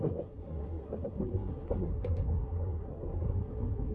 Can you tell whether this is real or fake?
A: fake